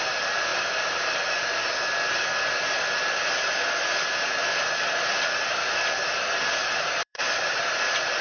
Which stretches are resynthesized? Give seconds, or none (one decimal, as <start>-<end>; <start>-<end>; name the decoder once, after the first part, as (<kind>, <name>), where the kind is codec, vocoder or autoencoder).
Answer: 0.5-1.7 (vocoder, BigVGAN v2); 6.6-7.6